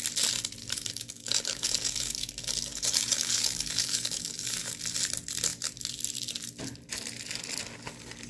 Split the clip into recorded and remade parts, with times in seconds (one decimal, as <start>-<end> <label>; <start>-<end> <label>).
0.0-0.6 recorded; 0.6-2.3 remade; 2.3-2.7 recorded; 2.7-4.8 remade; 4.8-8.3 recorded